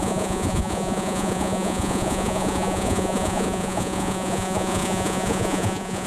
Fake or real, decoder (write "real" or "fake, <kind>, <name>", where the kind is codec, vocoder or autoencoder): fake, vocoder, Vocos